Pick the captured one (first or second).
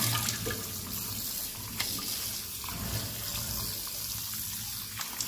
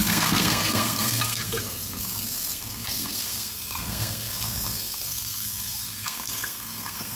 first